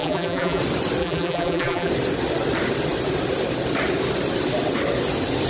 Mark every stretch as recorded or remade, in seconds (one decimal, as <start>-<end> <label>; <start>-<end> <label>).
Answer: 0.0-0.6 remade; 0.6-1.0 recorded; 1.0-1.9 remade; 1.9-5.5 recorded